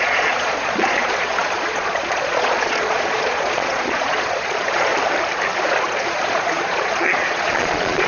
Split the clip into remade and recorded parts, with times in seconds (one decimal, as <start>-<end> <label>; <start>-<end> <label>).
0.0-4.9 remade; 4.9-5.7 recorded; 5.7-8.1 remade

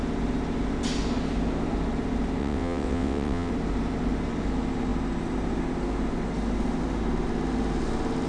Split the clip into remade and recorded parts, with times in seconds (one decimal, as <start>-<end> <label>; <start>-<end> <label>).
0.0-2.4 recorded; 2.4-3.5 remade; 3.5-8.3 recorded

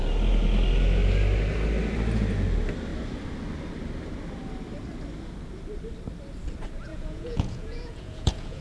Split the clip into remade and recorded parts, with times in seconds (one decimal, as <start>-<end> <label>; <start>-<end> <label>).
0.0-6.9 recorded; 6.9-8.6 remade

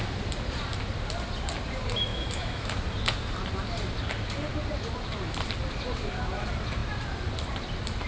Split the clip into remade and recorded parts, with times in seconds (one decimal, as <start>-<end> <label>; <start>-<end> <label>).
0.0-2.1 recorded; 2.1-2.7 remade; 2.7-8.1 recorded